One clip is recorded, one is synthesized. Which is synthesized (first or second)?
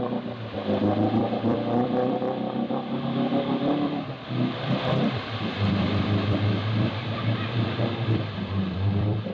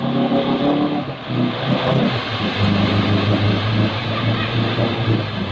first